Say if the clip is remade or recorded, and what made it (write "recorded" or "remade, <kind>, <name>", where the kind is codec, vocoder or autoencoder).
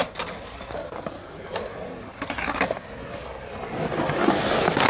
recorded